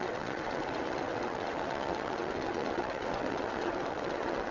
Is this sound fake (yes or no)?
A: yes